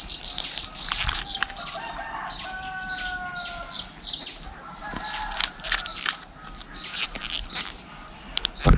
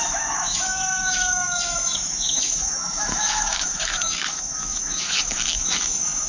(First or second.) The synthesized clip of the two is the second